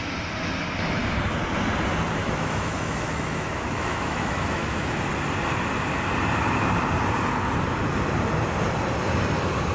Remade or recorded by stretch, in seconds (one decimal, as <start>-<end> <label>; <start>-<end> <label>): 0.0-2.2 recorded; 2.2-4.9 remade; 4.9-9.7 recorded